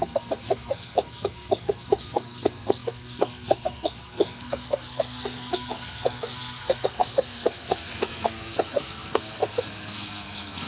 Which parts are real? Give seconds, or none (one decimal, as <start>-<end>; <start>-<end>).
none